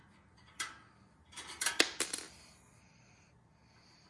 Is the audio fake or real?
real